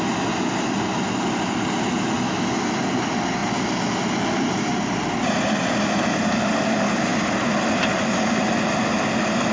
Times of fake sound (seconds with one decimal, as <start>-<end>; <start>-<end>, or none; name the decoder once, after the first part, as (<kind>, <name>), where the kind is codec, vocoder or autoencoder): none